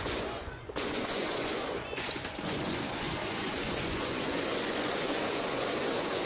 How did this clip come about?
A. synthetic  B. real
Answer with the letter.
A